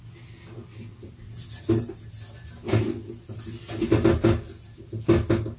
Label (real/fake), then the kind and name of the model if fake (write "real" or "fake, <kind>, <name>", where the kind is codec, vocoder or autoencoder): real